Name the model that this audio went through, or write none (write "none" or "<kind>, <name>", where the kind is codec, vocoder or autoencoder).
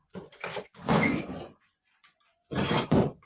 vocoder, Vocos